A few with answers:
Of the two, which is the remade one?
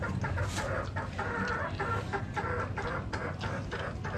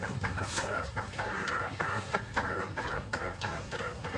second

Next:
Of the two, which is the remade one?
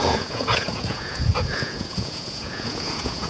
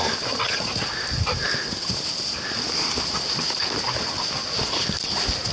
first